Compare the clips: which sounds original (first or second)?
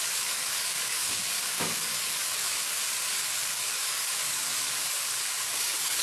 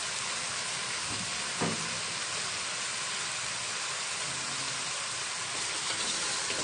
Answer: second